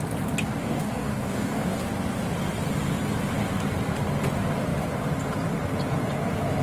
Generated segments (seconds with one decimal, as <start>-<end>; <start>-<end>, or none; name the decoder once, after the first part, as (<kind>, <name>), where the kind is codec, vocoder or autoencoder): 0.6-1.9 (codec, DAC)